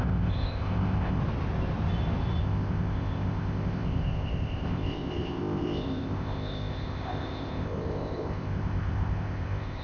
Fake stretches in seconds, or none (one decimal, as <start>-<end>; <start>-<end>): 0.0-1.2; 2.4-9.8